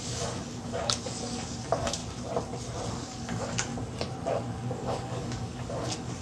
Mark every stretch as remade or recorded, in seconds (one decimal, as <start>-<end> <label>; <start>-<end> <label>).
0.0-2.0 remade; 2.0-2.9 recorded; 2.9-3.7 remade; 3.7-4.3 recorded; 4.3-6.2 remade